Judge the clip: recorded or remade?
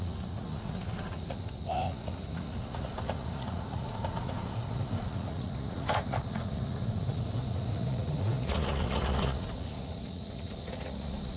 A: remade